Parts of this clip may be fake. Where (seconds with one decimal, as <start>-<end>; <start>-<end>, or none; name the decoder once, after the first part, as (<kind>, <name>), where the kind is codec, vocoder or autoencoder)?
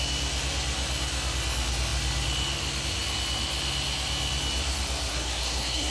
5.1-5.9 (codec, SNAC)